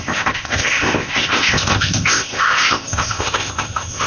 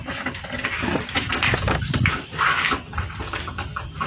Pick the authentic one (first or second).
second